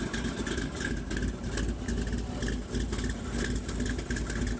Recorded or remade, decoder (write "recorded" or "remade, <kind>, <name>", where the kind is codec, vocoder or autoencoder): recorded